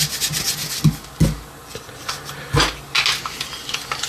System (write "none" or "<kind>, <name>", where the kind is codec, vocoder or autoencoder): none